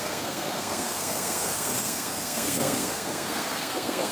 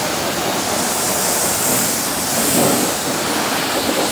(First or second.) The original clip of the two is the second